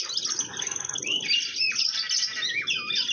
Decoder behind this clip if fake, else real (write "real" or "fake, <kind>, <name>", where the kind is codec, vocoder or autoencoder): real